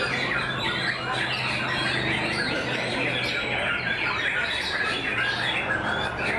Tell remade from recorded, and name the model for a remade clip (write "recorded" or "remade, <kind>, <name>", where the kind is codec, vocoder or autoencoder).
recorded